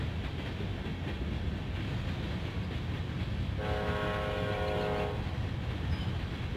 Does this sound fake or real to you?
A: real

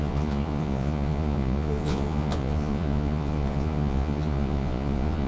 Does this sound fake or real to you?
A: fake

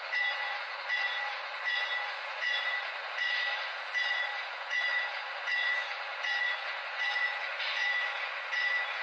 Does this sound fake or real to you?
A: fake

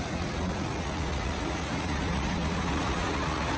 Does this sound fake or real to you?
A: fake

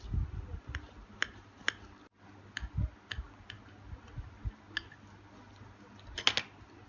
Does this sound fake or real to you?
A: real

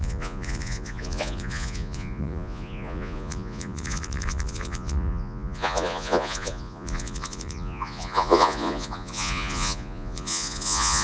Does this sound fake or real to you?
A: fake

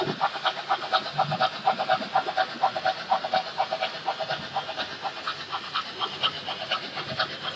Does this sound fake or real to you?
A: real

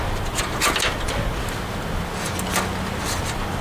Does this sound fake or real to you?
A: real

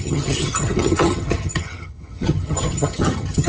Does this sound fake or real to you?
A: fake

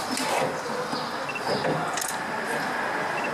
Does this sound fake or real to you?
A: real